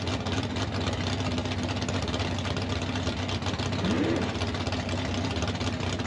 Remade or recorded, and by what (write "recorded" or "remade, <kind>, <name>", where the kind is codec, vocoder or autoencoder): recorded